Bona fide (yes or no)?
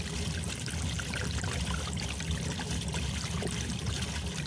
yes